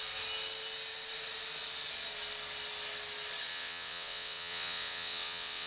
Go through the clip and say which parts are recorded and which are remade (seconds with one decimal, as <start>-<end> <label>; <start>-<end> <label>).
0.0-3.5 recorded; 3.5-5.7 remade